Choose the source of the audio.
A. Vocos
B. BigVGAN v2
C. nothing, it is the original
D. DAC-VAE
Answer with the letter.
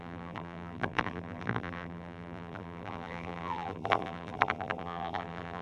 B